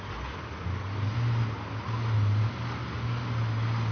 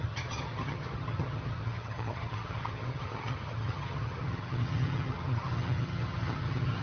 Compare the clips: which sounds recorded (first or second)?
first